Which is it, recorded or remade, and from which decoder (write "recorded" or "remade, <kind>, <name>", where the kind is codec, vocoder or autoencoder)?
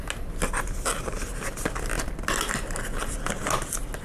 recorded